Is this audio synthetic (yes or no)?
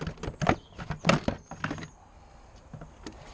no